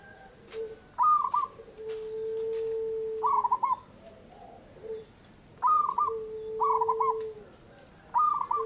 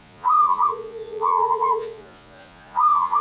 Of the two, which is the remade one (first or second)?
second